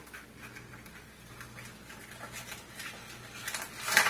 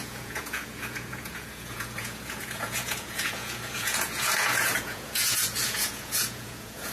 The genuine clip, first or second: first